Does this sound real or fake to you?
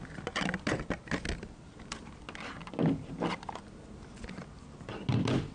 real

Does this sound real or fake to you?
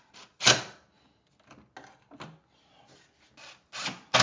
real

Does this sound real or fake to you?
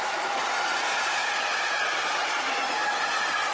real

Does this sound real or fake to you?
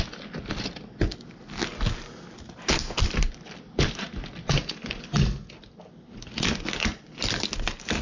real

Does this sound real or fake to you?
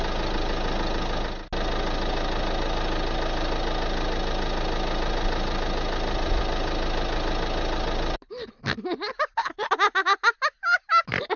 real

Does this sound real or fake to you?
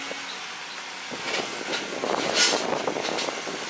real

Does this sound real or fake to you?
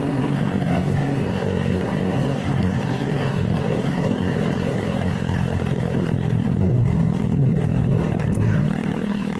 fake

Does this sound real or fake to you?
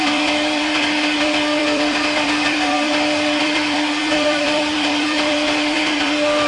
fake